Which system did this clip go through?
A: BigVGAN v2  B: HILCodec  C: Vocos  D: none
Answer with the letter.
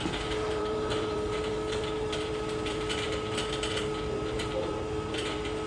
A